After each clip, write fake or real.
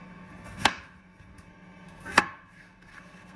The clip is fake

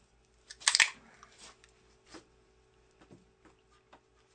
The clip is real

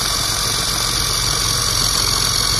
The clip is real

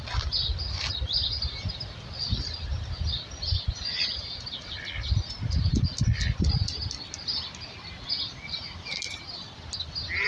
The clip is real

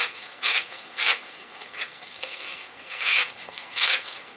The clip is fake